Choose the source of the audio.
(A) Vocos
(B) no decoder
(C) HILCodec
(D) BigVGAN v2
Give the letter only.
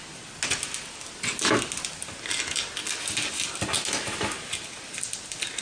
B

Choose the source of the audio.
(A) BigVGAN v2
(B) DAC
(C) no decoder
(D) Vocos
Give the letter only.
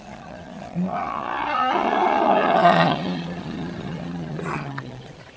D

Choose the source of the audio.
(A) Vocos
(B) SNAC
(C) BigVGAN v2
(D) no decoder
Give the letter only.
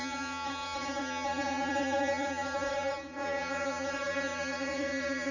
A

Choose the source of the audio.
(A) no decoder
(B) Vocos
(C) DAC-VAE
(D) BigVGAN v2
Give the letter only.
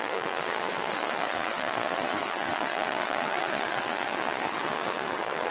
B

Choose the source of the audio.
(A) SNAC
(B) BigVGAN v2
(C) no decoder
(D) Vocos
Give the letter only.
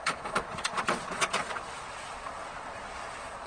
D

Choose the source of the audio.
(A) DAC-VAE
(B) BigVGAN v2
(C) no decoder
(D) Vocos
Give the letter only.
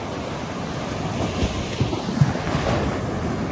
C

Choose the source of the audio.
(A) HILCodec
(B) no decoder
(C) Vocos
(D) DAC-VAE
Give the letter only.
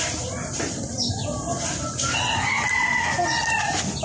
B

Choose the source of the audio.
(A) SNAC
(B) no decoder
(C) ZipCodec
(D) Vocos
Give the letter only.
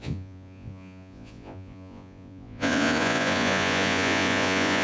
D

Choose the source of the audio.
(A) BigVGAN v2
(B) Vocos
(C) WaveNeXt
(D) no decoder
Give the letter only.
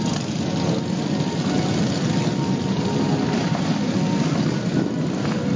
D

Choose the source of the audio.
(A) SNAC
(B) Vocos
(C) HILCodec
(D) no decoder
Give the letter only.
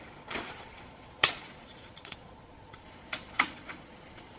B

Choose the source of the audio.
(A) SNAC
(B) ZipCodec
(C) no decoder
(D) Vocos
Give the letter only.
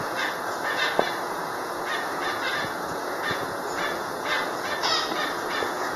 D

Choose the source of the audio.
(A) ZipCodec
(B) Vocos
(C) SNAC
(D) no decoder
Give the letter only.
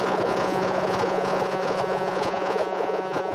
B